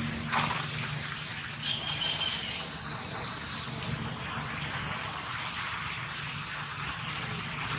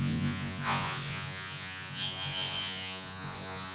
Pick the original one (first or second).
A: first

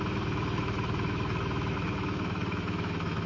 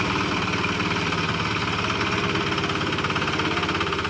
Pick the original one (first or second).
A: second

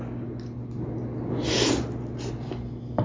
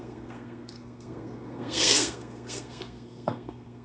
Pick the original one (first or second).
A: first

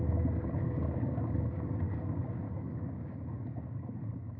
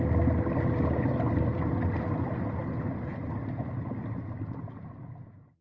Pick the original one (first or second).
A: second